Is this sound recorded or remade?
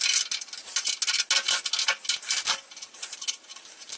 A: recorded